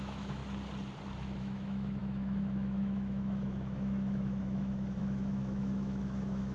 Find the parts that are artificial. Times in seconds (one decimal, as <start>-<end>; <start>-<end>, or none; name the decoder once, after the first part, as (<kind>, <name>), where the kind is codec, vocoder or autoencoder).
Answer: 0.0-0.4 (autoencoder, DAC-VAE); 1.4-6.5